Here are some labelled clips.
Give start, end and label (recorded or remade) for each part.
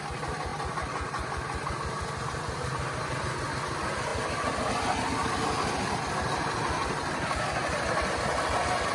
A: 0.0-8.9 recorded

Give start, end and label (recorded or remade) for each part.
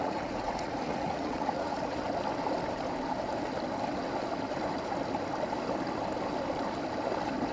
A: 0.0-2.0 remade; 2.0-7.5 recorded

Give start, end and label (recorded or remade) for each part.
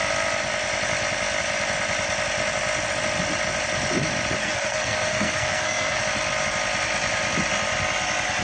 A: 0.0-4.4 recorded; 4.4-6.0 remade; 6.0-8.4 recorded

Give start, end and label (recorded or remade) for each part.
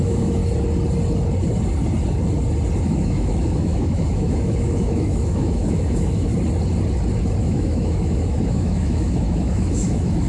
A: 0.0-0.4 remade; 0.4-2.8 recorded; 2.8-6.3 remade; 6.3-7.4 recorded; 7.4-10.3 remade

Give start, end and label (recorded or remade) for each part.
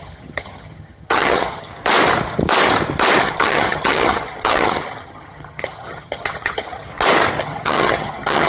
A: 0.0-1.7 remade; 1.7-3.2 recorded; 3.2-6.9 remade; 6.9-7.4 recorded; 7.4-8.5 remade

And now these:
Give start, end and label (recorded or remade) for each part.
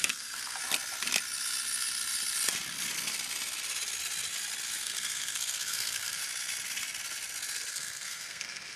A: 0.0-0.6 remade; 0.6-4.8 recorded; 4.8-6.2 remade; 6.2-7.7 recorded; 7.7-8.8 remade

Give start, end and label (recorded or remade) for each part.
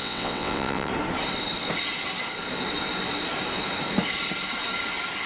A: 0.0-0.9 remade; 0.9-5.3 recorded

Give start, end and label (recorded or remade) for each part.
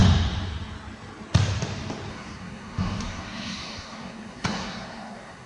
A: 0.0-2.1 recorded; 2.1-5.5 remade